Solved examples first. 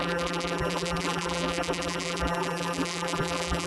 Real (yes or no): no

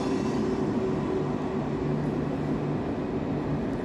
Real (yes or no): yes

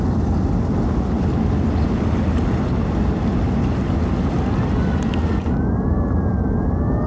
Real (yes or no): yes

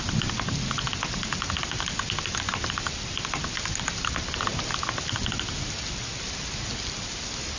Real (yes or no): yes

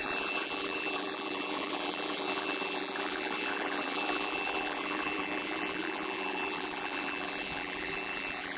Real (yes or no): no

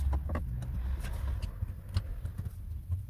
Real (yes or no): yes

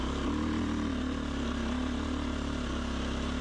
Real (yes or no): yes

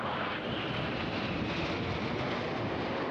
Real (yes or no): yes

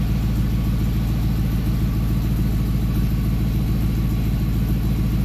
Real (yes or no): yes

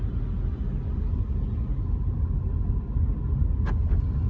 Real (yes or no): yes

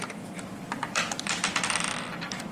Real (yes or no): no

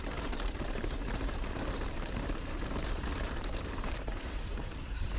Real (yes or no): no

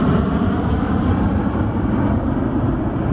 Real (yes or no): no